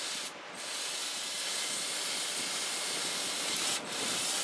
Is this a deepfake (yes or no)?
no